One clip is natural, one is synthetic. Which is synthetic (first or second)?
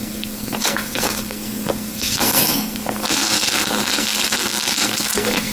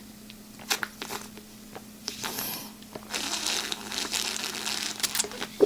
first